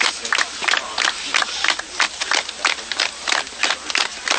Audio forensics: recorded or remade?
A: recorded